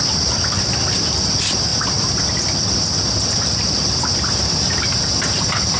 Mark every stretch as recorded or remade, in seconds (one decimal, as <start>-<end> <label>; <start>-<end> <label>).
0.0-5.8 recorded

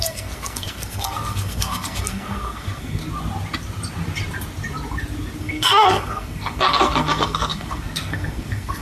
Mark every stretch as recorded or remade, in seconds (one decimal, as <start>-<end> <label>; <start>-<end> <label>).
0.0-3.0 remade; 3.0-5.4 recorded; 5.4-8.8 remade